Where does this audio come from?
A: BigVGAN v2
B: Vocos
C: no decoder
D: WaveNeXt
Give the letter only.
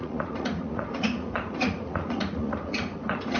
B